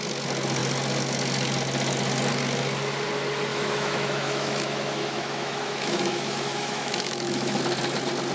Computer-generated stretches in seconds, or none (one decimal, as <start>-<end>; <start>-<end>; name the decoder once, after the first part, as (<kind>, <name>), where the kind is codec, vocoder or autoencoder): 3.5-7.6 (autoencoder, DAC-VAE)